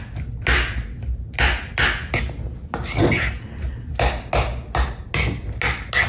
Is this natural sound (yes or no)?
yes